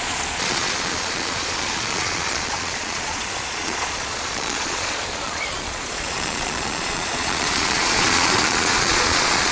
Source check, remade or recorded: remade